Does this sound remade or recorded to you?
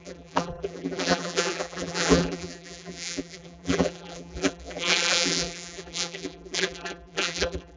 remade